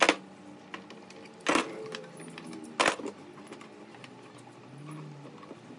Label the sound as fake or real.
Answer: real